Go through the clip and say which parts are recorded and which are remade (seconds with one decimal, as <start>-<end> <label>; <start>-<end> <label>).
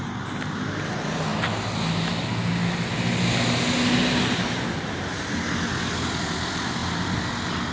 0.0-7.7 recorded